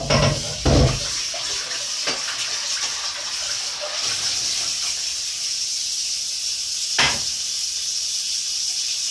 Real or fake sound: real